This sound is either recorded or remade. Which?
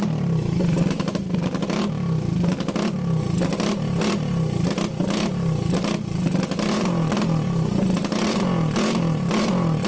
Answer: recorded